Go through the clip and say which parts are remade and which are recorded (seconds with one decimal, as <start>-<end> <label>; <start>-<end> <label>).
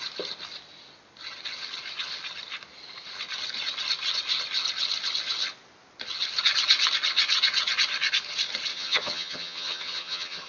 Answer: 0.0-8.7 recorded; 8.7-10.5 remade